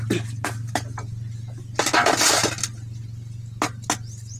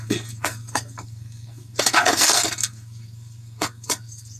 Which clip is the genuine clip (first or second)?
first